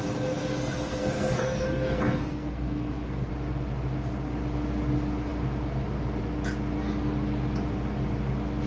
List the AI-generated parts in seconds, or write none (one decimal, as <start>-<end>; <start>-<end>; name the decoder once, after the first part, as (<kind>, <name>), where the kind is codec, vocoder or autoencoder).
0.4-3.3 (codec, SNAC)

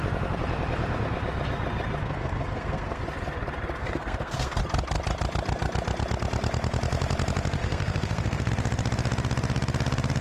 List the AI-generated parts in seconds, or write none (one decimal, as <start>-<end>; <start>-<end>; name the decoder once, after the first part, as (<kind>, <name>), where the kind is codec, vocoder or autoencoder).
2.0-3.0 (codec, SNAC); 3.8-4.6; 7.6-8.5

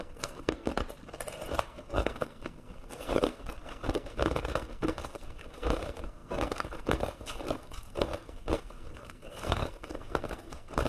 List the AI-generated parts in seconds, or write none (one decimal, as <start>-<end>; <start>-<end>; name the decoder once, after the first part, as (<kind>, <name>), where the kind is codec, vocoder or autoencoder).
0.0-0.7 (codec, SNAC); 1.6-10.9

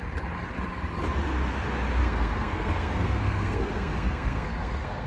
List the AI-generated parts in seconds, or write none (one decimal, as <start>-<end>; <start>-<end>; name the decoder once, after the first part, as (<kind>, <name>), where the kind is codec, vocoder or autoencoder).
2.0-5.1 (codec, SNAC)

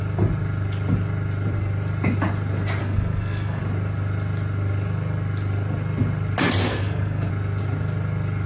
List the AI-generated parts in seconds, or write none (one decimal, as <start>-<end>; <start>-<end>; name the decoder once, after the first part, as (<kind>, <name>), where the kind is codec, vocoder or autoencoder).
2.8-3.6 (codec, SNAC); 6.7-7.3

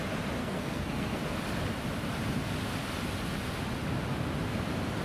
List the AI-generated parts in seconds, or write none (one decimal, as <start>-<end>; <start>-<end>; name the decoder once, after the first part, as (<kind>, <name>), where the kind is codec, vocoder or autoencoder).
0.4-1.2 (codec, SNAC)

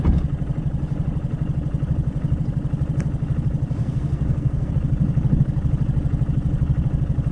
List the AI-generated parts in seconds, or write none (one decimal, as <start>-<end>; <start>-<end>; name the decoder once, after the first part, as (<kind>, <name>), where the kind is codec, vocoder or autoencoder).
3.8-4.7 (codec, SNAC)

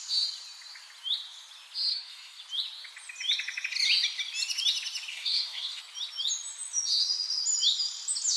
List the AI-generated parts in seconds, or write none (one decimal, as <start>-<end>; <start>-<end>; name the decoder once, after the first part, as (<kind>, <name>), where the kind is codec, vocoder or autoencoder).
1.9-2.4 (codec, SNAC); 5.1-5.8